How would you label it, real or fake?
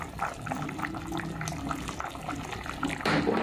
real